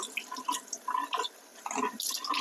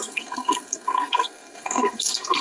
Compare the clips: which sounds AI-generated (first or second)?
second